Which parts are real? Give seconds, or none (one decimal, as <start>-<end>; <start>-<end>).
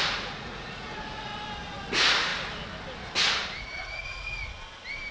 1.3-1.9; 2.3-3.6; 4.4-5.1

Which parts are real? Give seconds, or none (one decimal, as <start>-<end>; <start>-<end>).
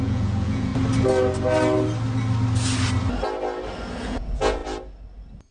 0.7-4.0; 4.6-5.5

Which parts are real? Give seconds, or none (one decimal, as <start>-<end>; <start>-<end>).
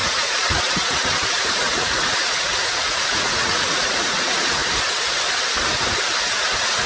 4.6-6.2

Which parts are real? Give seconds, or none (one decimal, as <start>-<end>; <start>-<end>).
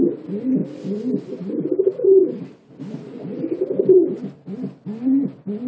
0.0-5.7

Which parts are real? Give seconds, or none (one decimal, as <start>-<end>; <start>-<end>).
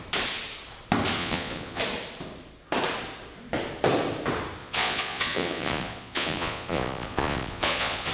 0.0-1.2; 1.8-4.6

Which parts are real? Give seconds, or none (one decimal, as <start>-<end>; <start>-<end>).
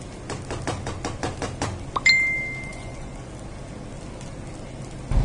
0.0-2.7; 3.3-5.2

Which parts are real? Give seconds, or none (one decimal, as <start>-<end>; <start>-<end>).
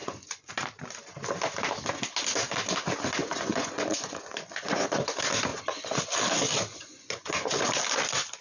0.5-3.2; 5.1-5.5; 6.0-6.7; 7.5-8.4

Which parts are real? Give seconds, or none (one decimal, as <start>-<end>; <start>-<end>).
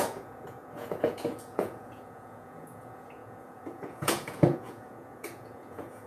none